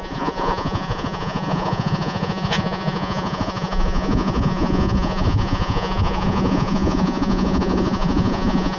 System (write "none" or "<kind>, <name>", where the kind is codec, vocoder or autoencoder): vocoder, Vocos